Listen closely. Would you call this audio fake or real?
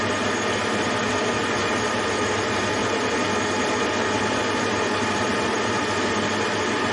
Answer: real